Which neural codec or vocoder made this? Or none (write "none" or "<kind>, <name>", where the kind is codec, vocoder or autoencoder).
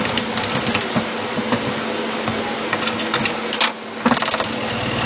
none